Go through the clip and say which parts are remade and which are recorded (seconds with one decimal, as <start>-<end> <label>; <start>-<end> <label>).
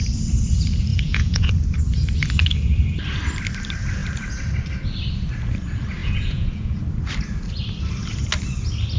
0.0-0.9 recorded; 0.9-1.5 remade; 1.5-6.0 recorded; 6.0-6.8 remade; 6.8-9.0 recorded